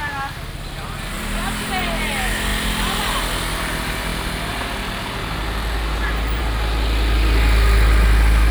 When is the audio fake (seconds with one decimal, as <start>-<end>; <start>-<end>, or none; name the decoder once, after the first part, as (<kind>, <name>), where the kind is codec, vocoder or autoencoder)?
2.5-3.2 (vocoder, BigVGAN v2)